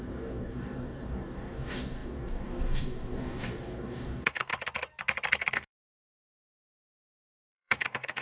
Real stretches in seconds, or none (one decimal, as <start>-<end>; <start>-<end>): 4.5-5.5